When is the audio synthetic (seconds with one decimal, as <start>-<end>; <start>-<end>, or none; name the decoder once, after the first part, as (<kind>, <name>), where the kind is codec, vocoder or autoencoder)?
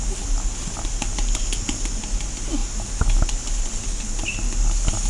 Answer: none